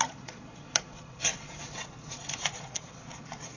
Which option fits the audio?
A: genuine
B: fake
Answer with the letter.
B